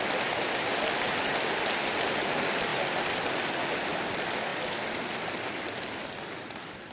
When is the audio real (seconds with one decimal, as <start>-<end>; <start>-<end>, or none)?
0.0-6.9